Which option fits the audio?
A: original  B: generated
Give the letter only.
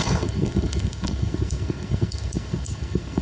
B